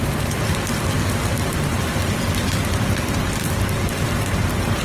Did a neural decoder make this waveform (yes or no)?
yes